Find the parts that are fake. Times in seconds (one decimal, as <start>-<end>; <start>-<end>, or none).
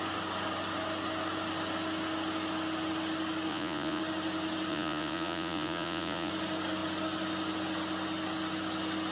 3.5-4.0; 4.7-6.3